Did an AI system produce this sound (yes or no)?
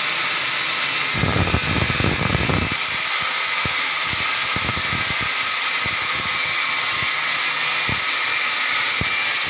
no